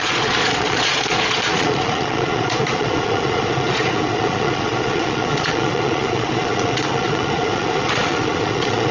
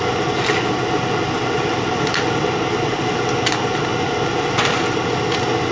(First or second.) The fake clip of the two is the first